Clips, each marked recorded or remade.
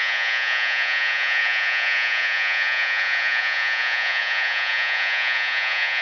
remade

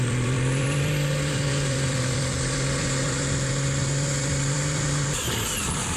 remade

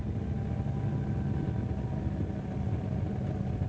recorded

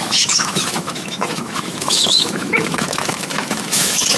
remade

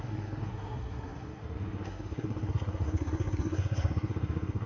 remade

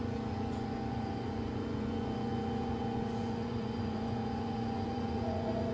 remade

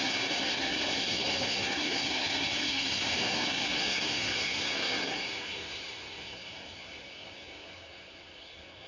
remade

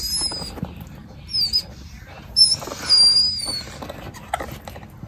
recorded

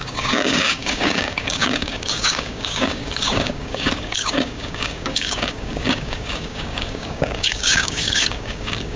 remade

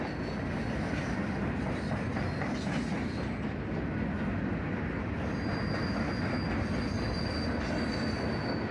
recorded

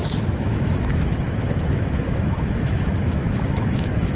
remade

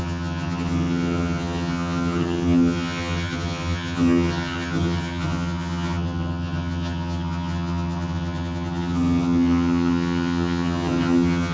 remade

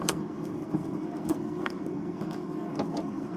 remade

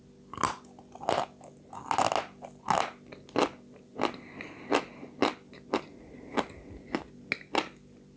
recorded